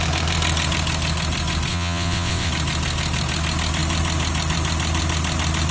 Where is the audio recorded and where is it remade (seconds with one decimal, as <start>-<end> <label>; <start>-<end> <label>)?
0.0-1.7 recorded; 1.7-2.5 remade; 2.5-5.7 recorded